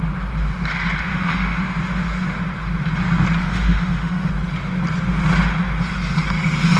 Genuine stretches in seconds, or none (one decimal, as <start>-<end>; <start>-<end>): 0.0-1.1; 1.6-3.4; 4.3-6.8